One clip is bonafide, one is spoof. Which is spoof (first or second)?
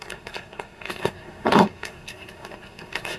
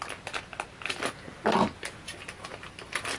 first